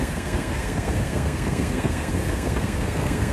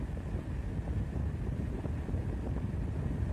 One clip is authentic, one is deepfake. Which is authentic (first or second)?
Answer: second